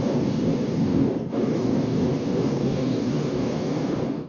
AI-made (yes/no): yes